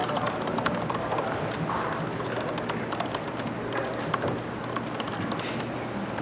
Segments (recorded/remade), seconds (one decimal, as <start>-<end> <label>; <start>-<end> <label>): 0.0-1.5 remade; 1.5-6.2 recorded